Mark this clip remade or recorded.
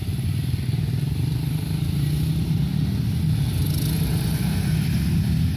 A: recorded